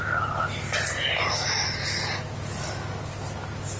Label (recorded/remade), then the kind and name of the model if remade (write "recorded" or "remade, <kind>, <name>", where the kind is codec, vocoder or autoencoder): recorded